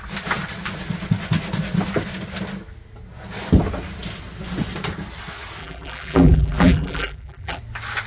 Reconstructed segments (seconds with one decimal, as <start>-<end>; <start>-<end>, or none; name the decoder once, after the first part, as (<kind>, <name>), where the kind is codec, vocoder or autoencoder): 5.6-7.6 (vocoder, BigVGAN v2)